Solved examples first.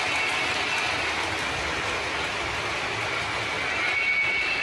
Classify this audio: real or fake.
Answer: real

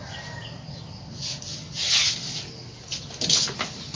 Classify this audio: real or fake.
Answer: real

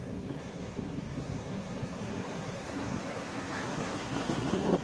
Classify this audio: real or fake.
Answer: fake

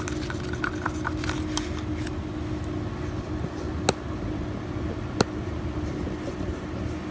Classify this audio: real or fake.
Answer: real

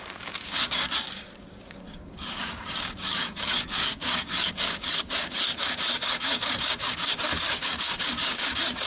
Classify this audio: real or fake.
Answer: fake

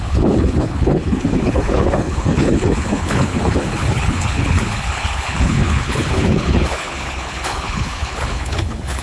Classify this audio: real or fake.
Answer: fake